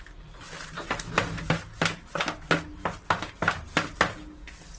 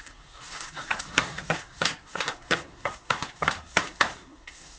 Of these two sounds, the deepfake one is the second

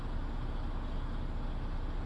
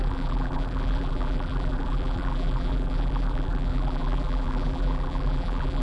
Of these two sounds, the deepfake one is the second